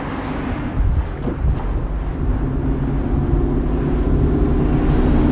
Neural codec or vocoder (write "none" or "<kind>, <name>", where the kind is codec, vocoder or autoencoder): none